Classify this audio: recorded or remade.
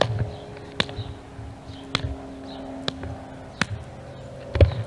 recorded